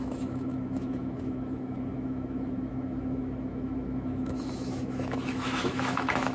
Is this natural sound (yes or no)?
no